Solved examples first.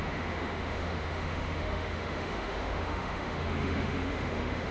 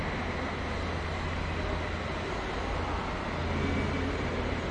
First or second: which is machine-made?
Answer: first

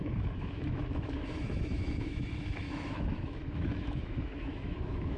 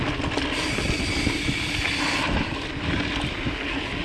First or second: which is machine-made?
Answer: first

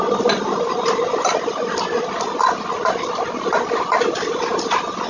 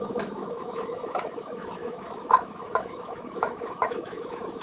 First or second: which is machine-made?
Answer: second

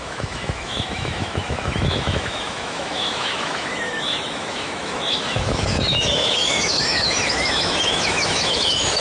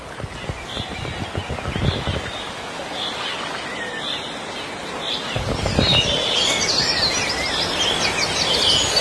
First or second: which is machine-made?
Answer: first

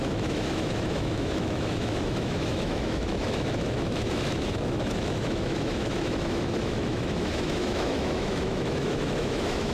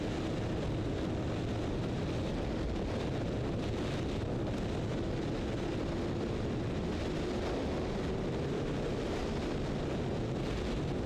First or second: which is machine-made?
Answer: first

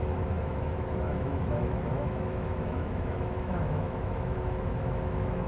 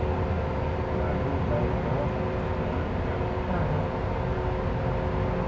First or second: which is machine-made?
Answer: first